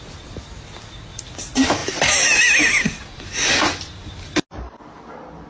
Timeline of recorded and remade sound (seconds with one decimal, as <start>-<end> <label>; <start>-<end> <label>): 0.0-5.5 recorded